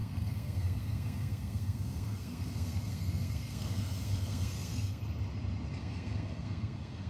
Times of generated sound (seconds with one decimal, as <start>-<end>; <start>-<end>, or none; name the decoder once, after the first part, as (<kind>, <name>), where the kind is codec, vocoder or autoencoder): 0.0-5.0 (codec, SNAC); 5.8-7.1